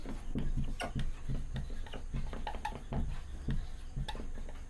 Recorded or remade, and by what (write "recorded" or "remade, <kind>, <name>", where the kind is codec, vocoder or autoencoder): recorded